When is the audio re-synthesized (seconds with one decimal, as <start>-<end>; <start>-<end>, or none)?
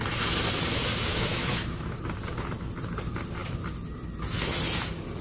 1.1-1.9